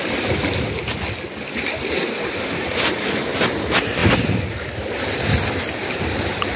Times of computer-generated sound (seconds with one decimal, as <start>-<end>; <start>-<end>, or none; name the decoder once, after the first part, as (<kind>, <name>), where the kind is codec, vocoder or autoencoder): none